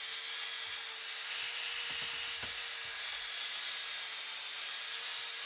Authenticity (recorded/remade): recorded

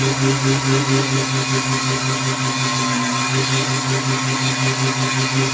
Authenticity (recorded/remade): recorded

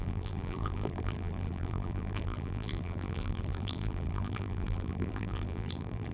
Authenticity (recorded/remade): remade